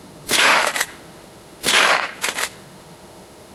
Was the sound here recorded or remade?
remade